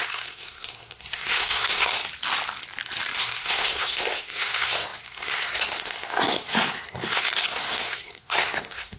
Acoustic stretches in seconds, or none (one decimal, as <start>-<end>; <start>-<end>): 2.0-3.2